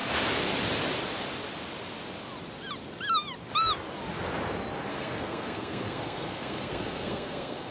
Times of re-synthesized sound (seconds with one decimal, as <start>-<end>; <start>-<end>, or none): 4.9-7.7